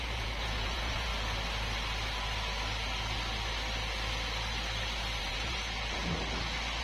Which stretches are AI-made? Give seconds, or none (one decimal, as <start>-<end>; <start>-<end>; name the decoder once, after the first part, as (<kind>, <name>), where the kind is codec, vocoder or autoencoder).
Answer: 0.0-1.1 (vocoder, Vocos); 5.2-6.0